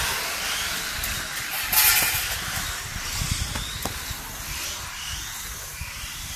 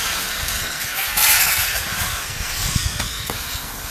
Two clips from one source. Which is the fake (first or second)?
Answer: second